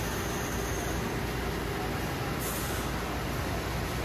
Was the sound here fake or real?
real